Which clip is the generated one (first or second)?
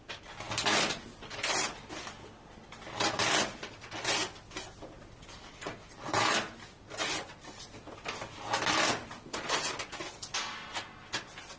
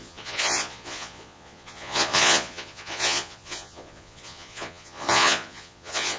second